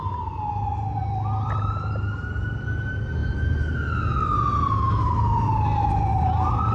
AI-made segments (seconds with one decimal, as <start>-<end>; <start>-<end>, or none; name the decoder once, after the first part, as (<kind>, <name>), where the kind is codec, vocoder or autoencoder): none